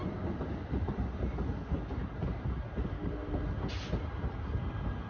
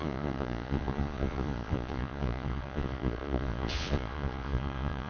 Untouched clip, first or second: first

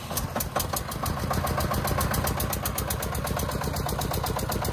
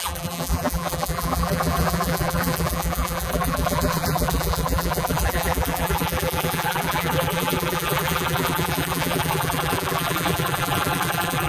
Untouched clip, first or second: first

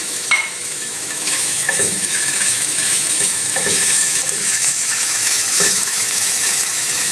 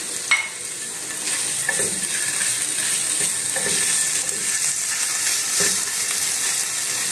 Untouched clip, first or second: second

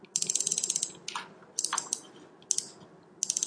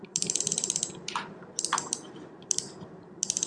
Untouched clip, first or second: first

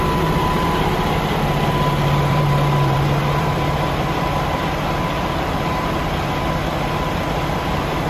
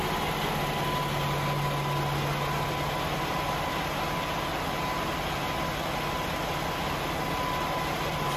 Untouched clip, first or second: second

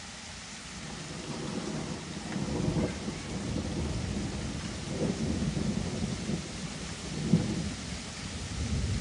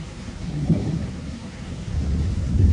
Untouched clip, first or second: first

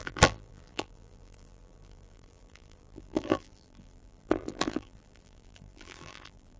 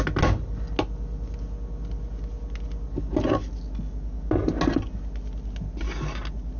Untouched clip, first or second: second